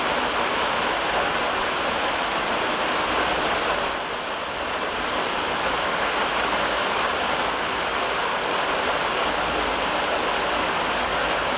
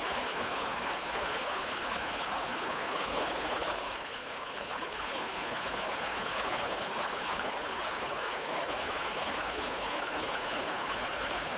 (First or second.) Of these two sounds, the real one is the first